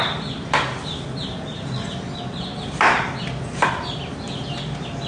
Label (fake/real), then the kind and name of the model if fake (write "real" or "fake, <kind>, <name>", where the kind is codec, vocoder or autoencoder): real